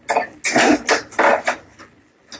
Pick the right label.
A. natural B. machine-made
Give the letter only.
A